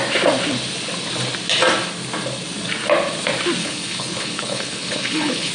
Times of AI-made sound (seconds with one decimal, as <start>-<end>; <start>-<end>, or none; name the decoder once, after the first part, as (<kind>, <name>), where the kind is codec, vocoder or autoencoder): 3.6-5.5 (codec, HILCodec)